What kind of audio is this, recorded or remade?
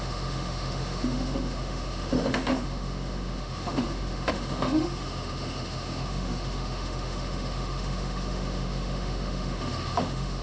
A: remade